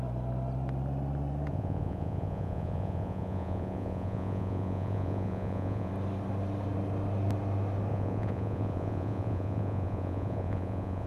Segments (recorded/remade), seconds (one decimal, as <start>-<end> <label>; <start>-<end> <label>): 0.0-1.5 recorded; 1.5-5.9 remade; 5.9-7.9 recorded; 7.9-11.1 remade